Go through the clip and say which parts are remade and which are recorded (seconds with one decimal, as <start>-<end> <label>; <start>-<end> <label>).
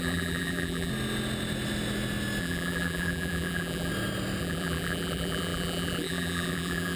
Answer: 0.0-0.9 remade; 0.9-2.4 recorded; 2.4-3.9 remade; 3.9-4.4 recorded; 4.4-7.0 remade